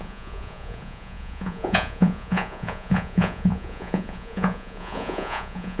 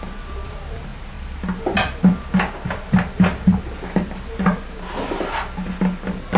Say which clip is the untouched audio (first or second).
second